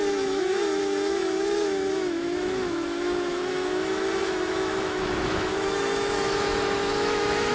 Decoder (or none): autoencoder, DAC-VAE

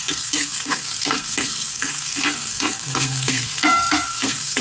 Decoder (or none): codec, SNAC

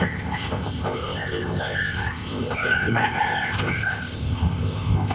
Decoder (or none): codec, ZipCodec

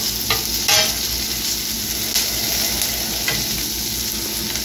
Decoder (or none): none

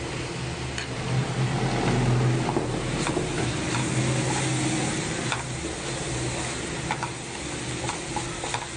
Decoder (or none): none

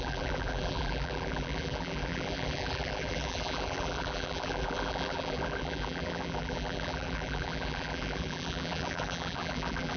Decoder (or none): vocoder, BigVGAN v2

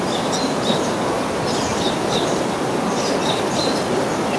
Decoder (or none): none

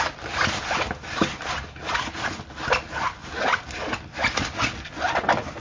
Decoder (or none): none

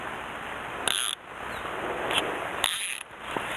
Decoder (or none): none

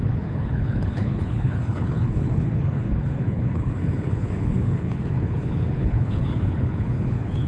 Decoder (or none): codec, HILCodec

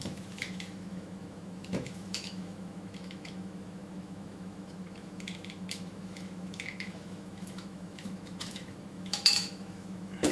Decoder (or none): autoencoder, DAC-VAE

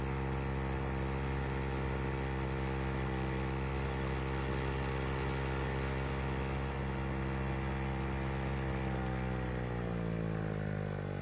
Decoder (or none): none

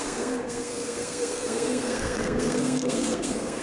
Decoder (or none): codec, SNAC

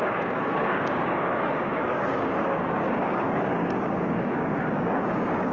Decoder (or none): codec, DAC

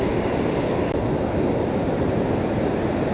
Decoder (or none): none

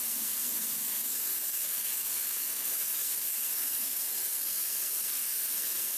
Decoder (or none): codec, SNAC